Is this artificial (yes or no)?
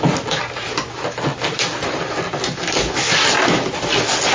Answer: no